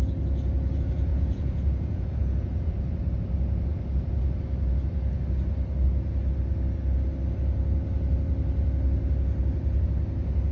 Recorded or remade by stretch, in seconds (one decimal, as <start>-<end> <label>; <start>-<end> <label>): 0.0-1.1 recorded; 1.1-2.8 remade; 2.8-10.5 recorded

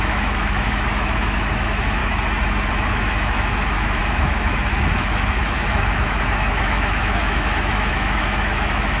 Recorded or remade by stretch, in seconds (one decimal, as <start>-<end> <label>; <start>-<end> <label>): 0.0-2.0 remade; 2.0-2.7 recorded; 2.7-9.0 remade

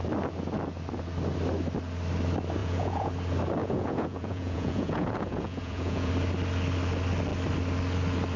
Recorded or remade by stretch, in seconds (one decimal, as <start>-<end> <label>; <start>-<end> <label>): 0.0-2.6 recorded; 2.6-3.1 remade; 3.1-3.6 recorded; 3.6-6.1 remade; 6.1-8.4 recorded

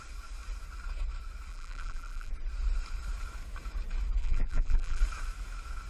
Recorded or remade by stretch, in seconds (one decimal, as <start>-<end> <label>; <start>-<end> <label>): 0.0-1.5 recorded; 1.5-2.3 remade; 2.3-4.2 recorded; 4.2-5.0 remade; 5.0-5.9 recorded

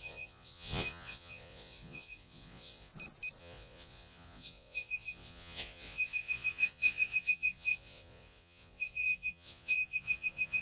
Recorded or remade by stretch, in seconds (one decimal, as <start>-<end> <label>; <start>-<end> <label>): 0.0-2.9 remade; 2.9-3.4 recorded; 3.4-10.6 remade